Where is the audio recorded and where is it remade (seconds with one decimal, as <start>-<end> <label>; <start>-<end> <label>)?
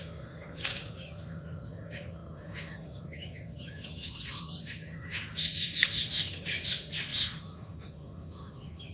0.0-8.9 remade